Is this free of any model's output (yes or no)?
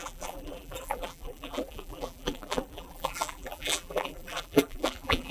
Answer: no